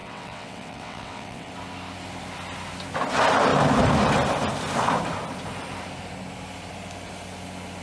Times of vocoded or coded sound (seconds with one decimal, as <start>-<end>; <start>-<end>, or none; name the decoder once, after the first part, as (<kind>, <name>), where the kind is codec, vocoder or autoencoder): 0.0-1.5 (vocoder, WaveNeXt)